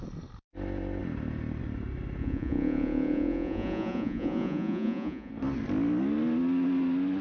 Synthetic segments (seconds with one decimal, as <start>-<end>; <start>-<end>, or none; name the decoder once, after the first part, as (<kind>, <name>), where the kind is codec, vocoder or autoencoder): 2.2-5.3 (vocoder, Vocos)